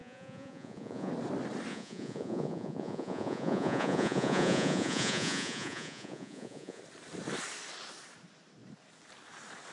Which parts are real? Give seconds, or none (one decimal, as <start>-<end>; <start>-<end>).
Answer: 1.1-1.7; 6.8-9.7